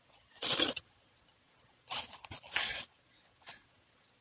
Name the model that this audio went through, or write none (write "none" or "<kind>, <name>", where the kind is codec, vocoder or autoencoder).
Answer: vocoder, Vocos